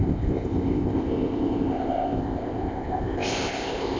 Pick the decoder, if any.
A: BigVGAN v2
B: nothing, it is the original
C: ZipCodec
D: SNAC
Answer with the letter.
C